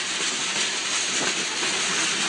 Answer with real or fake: real